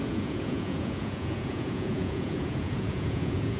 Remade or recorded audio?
remade